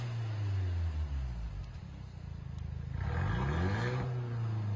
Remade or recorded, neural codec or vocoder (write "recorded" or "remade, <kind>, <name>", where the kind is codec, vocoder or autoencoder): recorded